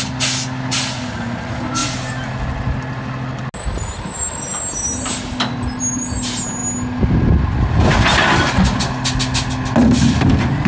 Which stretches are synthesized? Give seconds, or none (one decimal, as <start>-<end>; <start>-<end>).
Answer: none